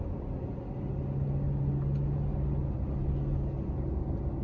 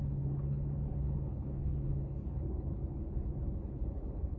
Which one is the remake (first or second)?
second